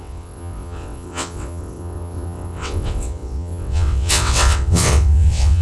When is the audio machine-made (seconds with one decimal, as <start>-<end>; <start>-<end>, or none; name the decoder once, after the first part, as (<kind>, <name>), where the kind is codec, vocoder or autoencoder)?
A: 0.0-5.6 (vocoder, WaveNeXt)